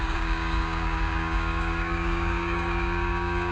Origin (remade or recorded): remade